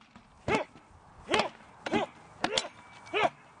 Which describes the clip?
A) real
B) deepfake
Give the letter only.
A